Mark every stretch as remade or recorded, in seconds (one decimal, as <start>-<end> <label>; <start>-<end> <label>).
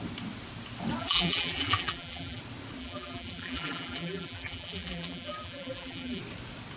0.0-1.0 recorded; 1.0-2.4 remade; 2.4-2.8 recorded; 2.8-6.2 remade; 6.2-6.8 recorded